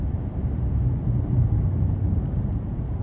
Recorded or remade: remade